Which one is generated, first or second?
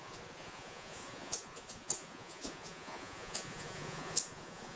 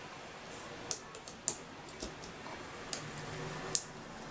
first